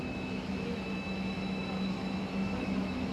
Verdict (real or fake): fake